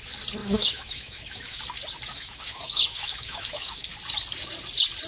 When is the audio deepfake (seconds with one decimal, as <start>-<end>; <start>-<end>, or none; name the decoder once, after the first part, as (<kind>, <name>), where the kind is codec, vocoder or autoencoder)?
0.4-1.6 (autoencoder, DAC-VAE); 2.1-3.9